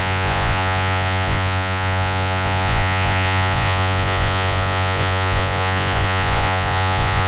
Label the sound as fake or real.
fake